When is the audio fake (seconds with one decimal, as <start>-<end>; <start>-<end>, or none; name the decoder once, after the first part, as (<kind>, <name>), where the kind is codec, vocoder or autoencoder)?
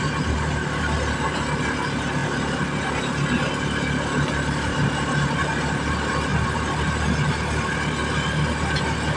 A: none